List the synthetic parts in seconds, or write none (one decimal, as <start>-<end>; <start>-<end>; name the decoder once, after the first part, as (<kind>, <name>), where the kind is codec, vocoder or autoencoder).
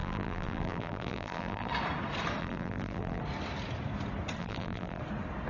0.0-1.7 (vocoder, BigVGAN v2); 2.4-3.2; 4.4-5.0